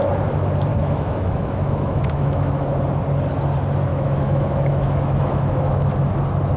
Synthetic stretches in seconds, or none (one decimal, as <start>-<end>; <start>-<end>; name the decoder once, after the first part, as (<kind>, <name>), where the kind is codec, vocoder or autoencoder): 0.7-2.8 (autoencoder, DAC-VAE); 3.9-5.9